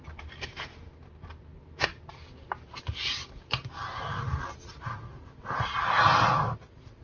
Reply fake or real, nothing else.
real